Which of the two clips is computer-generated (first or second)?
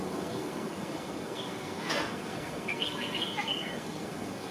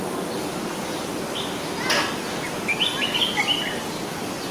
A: first